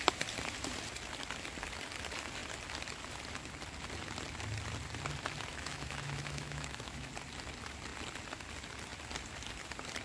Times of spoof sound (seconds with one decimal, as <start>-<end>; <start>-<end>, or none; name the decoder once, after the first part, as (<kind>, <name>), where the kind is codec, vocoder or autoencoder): 5.5-7.1 (autoencoder, DAC-VAE)

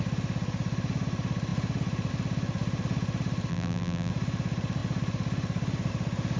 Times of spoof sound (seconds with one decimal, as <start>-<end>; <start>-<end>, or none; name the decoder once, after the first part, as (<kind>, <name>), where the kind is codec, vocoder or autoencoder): 3.5-4.1 (vocoder, BigVGAN v2)

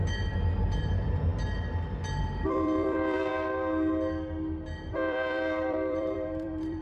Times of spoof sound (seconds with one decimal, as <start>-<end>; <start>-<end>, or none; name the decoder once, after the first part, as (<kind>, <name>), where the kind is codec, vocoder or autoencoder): 0.0-1.3 (vocoder, BigVGAN v2); 2.2-3.3; 4.9-6.8

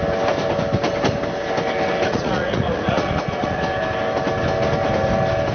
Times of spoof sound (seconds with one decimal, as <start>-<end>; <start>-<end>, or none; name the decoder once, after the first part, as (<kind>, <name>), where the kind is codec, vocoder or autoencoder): 2.1-3.6 (vocoder, Vocos)

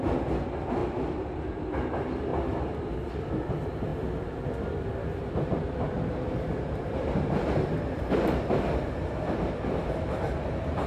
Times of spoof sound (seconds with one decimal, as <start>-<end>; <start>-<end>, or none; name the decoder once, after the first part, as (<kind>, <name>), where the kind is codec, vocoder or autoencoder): 0.8-1.4 (vocoder, BigVGAN v2)

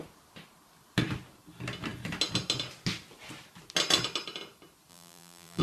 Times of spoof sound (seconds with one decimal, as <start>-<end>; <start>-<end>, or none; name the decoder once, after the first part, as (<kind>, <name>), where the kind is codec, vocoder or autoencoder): 4.9-5.6 (vocoder, BigVGAN v2)

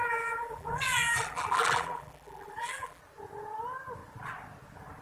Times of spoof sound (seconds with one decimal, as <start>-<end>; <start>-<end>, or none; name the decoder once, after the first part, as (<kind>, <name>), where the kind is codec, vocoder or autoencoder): 0.0-3.0 (vocoder, BigVGAN v2)